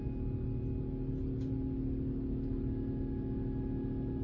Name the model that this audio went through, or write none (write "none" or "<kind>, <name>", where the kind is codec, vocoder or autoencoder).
none